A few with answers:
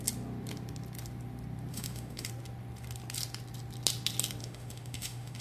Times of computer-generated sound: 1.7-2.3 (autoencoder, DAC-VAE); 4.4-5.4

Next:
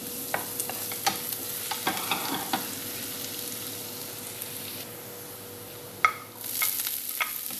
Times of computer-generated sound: none

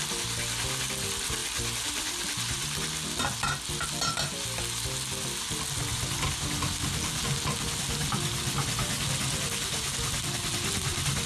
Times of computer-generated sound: none

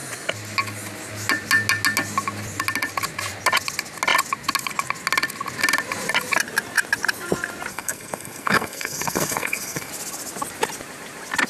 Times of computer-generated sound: 7.7-9.9 (codec, SNAC)

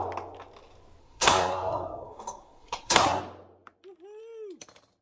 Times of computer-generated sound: 1.0-3.2 (codec, SNAC)